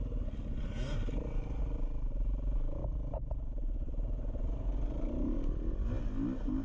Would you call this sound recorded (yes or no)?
yes